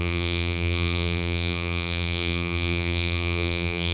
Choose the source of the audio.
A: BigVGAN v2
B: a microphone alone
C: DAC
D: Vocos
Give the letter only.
A